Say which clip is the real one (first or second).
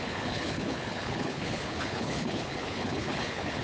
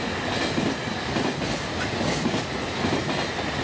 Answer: second